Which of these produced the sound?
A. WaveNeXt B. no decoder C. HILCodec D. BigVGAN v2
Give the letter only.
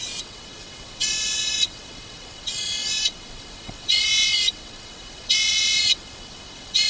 A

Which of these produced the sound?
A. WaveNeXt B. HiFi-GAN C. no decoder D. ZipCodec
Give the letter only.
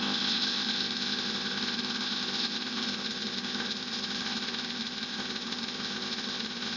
D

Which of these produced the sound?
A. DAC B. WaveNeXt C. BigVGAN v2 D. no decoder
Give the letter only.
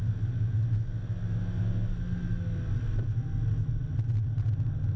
D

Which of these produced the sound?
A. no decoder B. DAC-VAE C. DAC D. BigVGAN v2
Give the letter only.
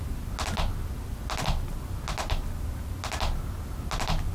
A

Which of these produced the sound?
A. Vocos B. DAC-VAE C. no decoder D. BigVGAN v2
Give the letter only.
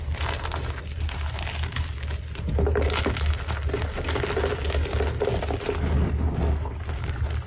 C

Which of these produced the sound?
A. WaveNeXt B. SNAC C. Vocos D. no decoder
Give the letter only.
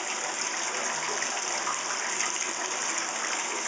D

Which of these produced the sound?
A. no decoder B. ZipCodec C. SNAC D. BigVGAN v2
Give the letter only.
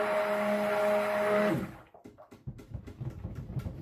A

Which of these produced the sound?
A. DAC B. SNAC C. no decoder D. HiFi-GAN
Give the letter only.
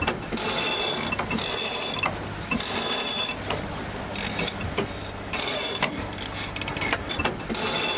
C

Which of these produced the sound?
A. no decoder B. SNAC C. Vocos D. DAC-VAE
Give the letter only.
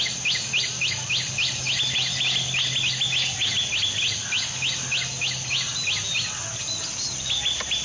A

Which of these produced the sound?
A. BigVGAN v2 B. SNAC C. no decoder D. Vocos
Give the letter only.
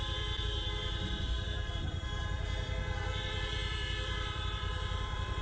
A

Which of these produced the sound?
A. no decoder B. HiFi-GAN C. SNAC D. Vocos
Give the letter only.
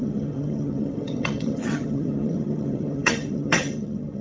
B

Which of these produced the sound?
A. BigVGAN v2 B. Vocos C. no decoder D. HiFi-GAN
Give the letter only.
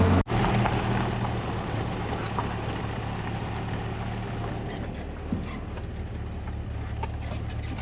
C